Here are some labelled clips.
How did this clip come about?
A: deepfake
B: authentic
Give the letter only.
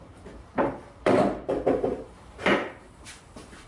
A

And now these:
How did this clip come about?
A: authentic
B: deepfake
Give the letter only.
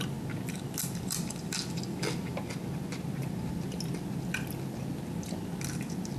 A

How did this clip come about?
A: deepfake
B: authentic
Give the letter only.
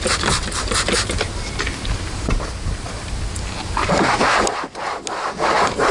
B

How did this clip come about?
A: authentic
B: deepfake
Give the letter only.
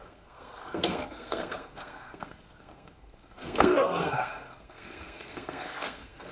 B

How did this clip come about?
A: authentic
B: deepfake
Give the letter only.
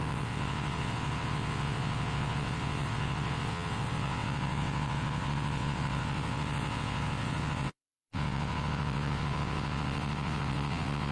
B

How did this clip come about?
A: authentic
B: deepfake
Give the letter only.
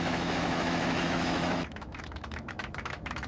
B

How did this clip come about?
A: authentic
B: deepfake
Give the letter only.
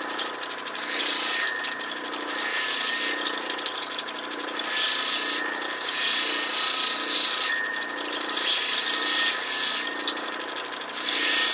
B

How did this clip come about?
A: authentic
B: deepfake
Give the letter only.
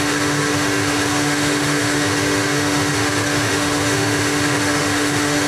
B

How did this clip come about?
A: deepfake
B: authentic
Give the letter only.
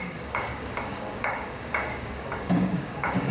A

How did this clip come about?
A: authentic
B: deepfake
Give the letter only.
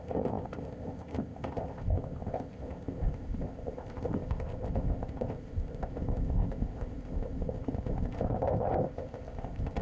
B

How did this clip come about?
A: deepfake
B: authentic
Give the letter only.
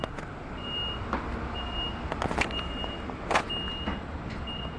B